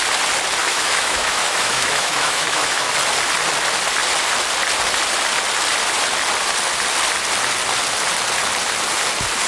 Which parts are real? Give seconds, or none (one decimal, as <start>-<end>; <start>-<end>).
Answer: 0.0-0.6; 2.9-9.5